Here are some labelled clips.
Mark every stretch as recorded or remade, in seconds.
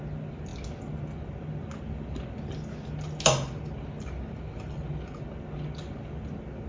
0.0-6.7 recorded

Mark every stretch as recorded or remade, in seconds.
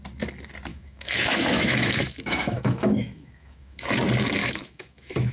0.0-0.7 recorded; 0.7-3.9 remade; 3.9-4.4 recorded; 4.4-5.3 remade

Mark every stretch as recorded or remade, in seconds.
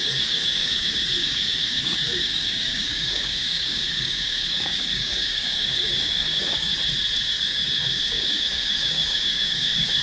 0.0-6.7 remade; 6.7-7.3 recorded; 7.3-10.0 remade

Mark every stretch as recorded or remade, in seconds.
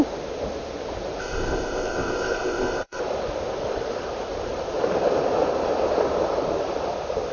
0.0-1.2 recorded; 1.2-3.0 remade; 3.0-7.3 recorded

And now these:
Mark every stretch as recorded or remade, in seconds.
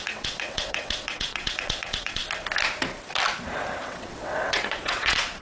0.0-2.2 remade; 2.2-3.8 recorded; 3.8-5.4 remade